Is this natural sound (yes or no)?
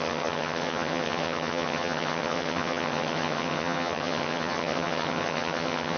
no